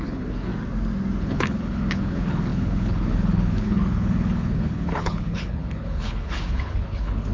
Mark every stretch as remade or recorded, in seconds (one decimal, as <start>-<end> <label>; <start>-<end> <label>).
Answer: 0.0-0.5 remade; 0.5-1.2 recorded; 1.2-7.3 remade